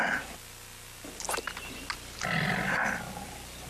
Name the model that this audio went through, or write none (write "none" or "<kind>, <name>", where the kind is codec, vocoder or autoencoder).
none